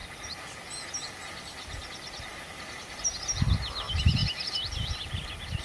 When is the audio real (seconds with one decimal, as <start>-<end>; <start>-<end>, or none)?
0.0-5.6